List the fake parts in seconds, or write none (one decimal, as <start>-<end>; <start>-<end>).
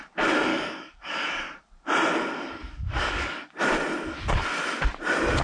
0.5-1.4; 2.6-3.6